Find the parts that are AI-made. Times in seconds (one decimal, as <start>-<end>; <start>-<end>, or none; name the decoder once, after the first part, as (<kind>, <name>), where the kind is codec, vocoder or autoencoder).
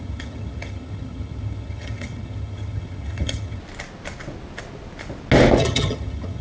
0.0-3.6 (vocoder, HiFi-GAN); 5.6-6.4